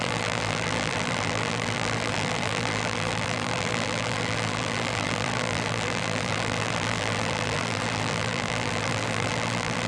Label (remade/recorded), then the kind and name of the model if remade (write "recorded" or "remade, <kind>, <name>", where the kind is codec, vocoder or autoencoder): remade, vocoder, BigVGAN v2